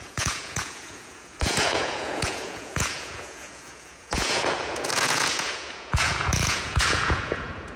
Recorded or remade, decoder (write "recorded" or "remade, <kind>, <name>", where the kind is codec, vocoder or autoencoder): remade, vocoder, Vocos